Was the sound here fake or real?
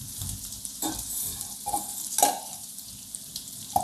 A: fake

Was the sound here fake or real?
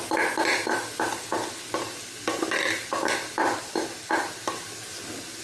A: real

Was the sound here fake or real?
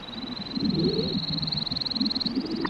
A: real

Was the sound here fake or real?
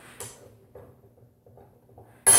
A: real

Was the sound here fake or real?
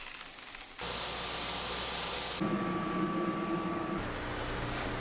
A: real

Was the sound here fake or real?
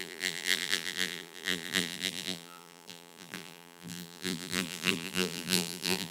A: fake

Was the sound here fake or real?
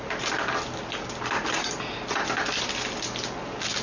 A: real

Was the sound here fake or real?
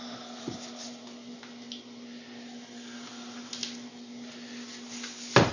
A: real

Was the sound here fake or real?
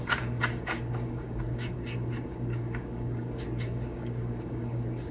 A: fake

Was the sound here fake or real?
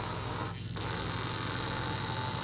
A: real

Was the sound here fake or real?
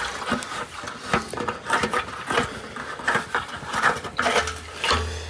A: real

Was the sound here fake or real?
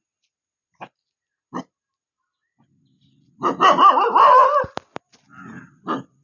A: real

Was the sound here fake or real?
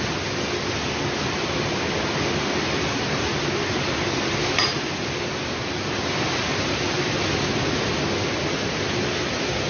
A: real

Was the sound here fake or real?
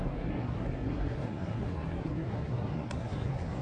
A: fake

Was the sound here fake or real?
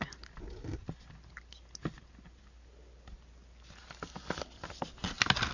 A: real